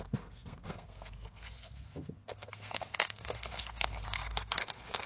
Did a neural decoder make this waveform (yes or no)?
yes